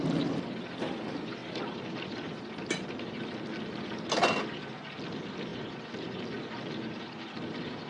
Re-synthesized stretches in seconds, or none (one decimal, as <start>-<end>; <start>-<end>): none